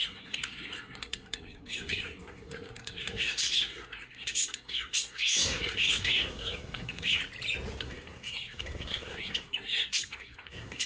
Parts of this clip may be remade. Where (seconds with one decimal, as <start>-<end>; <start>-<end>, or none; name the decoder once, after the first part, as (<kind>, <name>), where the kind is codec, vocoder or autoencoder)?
0.0-7.2 (codec, SNAC); 7.8-10.9